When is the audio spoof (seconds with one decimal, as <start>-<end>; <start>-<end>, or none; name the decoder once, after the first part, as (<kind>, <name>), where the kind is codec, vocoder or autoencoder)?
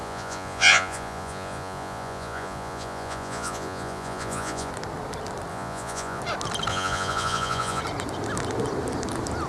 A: 0.0-4.7 (vocoder, Vocos); 5.5-6.2; 6.7-7.8